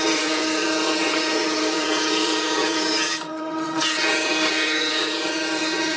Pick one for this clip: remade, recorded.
remade